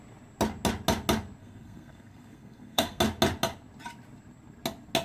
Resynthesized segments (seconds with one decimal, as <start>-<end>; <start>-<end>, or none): 1.4-3.0